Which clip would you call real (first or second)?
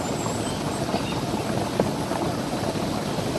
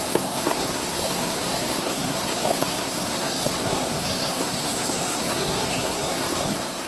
first